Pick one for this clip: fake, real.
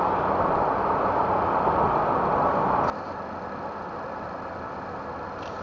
real